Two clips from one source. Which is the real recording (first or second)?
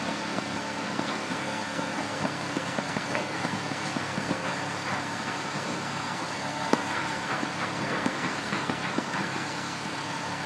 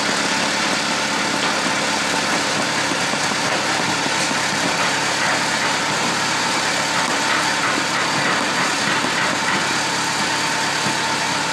second